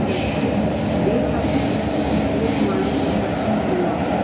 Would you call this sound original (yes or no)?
yes